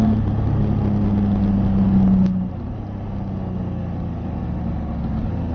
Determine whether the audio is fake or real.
real